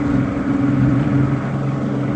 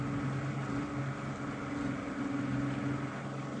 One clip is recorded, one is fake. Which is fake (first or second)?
first